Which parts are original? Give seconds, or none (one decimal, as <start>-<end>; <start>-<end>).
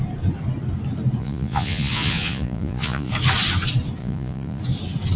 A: 0.0-1.2; 3.1-4.0; 4.6-5.2